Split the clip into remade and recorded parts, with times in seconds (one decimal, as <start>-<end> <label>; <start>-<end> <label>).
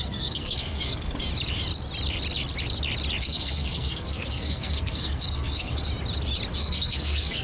0.0-1.2 remade; 1.2-3.2 recorded; 3.2-5.9 remade; 5.9-6.6 recorded; 6.6-7.4 remade